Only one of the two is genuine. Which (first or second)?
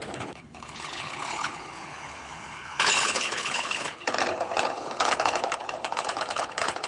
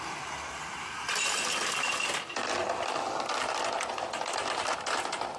second